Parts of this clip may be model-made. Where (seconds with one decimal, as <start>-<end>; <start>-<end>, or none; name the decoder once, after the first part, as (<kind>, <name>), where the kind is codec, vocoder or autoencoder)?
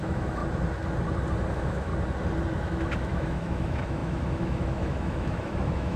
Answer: 0.0-0.4 (autoencoder, DAC-VAE); 1.5-1.9; 2.5-6.0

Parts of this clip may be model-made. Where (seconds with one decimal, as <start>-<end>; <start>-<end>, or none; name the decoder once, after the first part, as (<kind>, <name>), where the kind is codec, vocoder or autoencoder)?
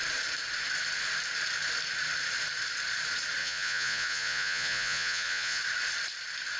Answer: 3.4-5.6 (vocoder, Vocos)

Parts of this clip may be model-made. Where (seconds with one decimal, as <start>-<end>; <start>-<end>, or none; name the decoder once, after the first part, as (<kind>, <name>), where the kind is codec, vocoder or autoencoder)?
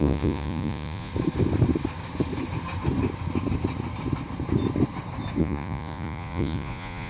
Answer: 0.0-1.1 (vocoder, Vocos); 5.4-7.1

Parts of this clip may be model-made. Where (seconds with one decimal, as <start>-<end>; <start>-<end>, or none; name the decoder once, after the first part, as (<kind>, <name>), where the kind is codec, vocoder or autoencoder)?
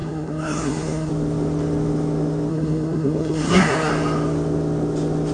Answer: 0.0-1.1 (codec, SNAC); 2.5-3.9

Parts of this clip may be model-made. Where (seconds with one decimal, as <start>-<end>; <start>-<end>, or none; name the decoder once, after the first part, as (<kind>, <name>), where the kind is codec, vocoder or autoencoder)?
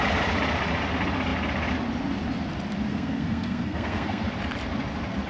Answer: 2.9-4.3 (codec, SNAC)